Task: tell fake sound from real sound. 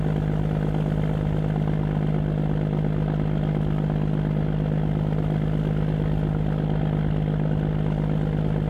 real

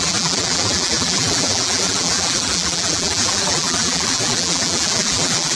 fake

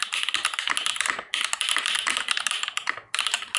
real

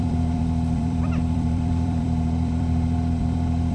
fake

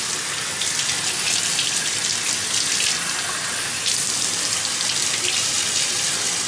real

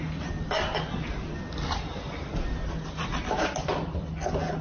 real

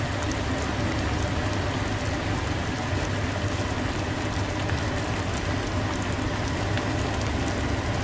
real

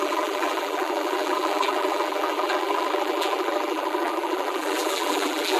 fake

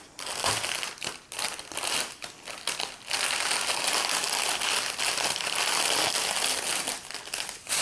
real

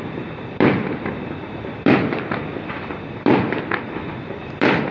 fake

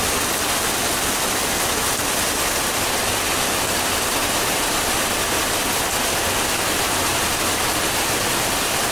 real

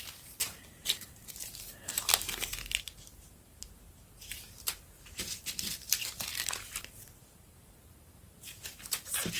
fake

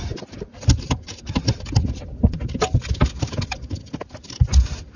real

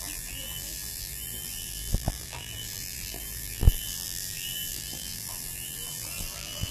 fake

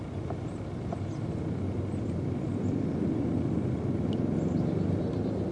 real